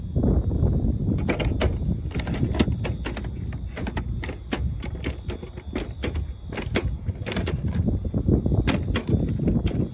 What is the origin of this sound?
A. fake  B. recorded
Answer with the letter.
B